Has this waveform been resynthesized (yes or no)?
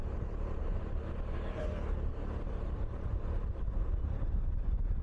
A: no